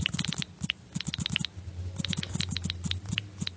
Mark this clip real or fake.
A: real